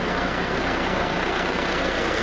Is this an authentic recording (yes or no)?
no